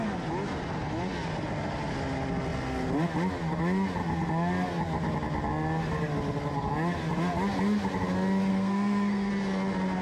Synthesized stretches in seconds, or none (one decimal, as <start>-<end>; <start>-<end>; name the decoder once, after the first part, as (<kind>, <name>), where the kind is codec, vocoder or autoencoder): 8.5-9.3 (codec, SNAC)